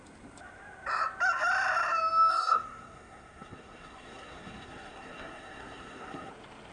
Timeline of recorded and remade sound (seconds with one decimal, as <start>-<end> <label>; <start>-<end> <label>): 0.0-2.3 recorded; 2.3-6.3 remade; 6.3-6.7 recorded